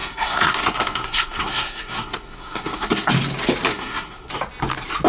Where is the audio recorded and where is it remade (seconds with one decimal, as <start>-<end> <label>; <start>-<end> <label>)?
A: 0.0-3.1 remade; 3.1-3.7 recorded; 3.7-4.3 remade; 4.3-5.1 recorded